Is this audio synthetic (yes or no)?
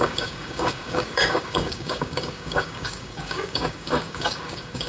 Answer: yes